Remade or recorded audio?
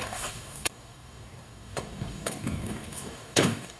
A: remade